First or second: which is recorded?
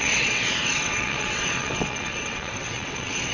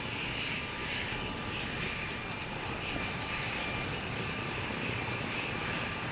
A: second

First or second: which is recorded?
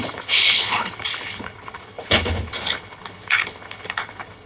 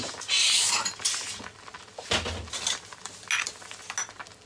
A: second